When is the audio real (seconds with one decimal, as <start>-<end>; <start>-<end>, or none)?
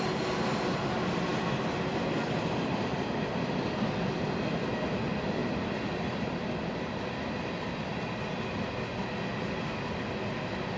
0.0-10.8